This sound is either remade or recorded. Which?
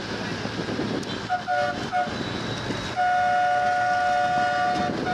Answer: recorded